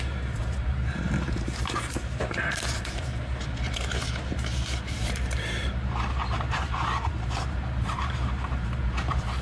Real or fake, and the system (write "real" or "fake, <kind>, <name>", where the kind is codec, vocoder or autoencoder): fake, vocoder, BigVGAN v2